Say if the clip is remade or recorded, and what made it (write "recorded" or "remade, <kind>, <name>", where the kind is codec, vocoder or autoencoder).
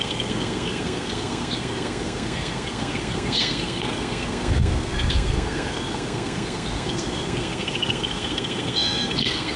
remade, codec, SNAC